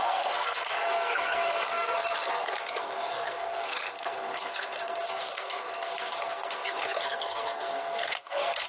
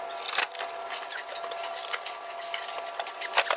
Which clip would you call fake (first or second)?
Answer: first